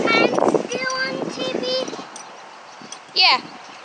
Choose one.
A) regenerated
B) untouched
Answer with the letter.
B